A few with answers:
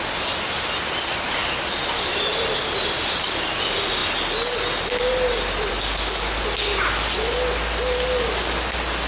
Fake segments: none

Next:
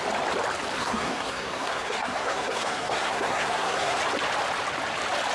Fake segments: 0.8-4.0 (codec, SNAC)

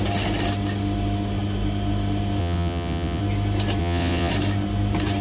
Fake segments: 2.4-3.2 (vocoder, WaveNeXt); 3.8-4.3

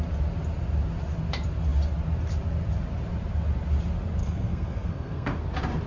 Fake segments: 4.2-5.4 (codec, SNAC)

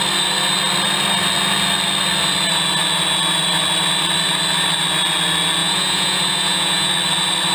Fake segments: 5.6-6.9 (vocoder, Vocos)

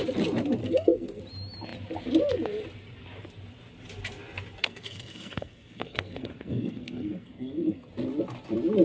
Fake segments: 0.6-1.2 (codec, SNAC); 4.6-7.9

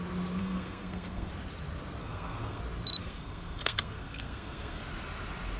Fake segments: 0.4-1.3 (codec, SNAC); 2.0-2.6; 3.0-4.8